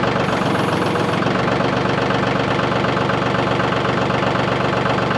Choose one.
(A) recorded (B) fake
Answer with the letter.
A